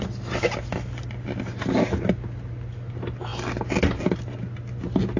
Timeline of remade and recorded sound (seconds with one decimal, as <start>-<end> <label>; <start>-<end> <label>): 0.0-5.2 recorded